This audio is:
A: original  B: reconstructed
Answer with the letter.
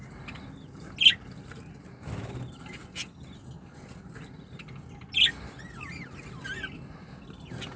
A